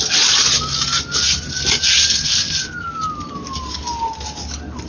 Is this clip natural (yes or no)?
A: yes